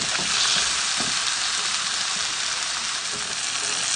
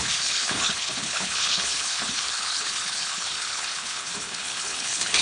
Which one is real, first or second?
first